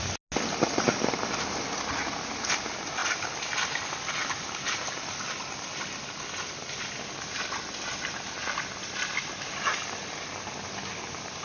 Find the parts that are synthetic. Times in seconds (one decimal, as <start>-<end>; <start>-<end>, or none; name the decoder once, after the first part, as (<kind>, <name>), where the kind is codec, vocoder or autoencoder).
none